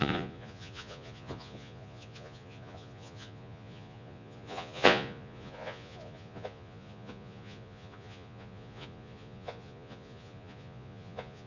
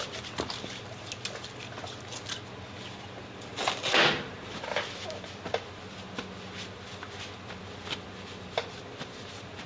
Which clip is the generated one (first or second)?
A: first